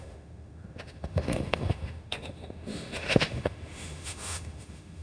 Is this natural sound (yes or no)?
no